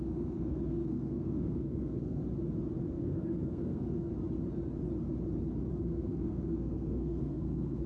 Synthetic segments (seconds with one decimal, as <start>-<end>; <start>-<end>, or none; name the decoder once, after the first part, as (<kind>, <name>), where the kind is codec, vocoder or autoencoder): 0.0-2.2 (codec, SNAC); 2.9-4.1; 5.7-7.9